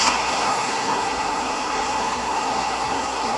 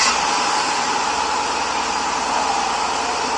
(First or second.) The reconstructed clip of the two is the first